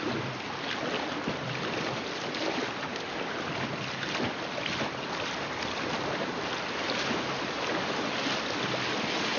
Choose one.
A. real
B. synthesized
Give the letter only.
A